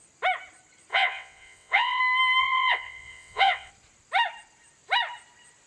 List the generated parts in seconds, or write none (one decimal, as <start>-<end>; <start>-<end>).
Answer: 0.9-2.0; 2.4-3.7